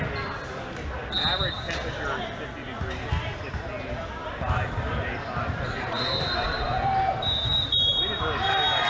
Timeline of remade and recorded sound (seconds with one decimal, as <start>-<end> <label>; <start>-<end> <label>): 0.0-4.2 recorded; 4.2-8.2 remade; 8.2-8.9 recorded